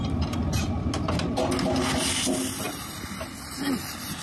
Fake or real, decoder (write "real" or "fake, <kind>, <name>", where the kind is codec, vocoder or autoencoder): real